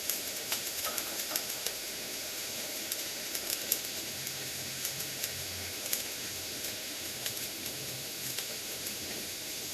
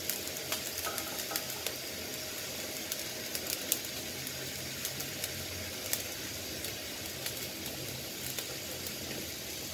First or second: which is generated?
first